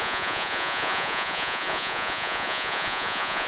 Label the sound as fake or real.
fake